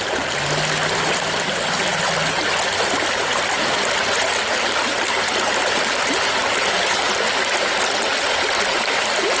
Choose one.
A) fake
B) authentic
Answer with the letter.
B